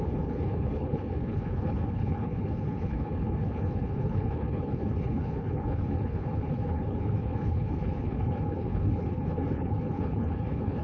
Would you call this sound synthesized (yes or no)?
yes